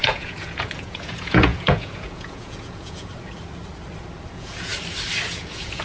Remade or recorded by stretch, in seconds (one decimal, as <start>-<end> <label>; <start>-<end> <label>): 0.0-3.1 remade; 3.1-4.3 recorded; 4.3-4.7 remade; 4.7-5.3 recorded; 5.3-5.8 remade